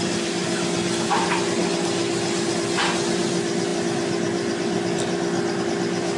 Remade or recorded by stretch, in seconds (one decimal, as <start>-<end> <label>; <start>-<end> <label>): 0.0-6.2 recorded

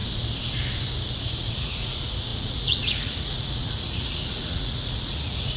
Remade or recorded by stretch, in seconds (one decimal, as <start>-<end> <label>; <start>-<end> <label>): 0.0-1.4 recorded; 1.4-5.6 remade

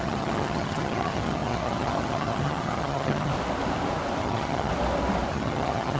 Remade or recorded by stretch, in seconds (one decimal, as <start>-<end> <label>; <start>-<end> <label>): 0.0-3.3 remade; 3.3-4.2 recorded; 4.2-4.7 remade; 4.7-5.3 recorded; 5.3-6.0 remade

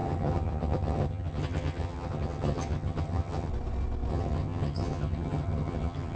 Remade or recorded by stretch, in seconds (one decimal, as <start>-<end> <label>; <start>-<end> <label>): 0.0-3.5 remade; 3.5-4.1 recorded; 4.1-6.2 remade

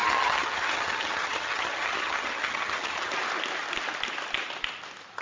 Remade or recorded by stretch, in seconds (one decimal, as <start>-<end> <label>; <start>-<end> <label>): 0.0-3.1 remade; 3.1-5.2 recorded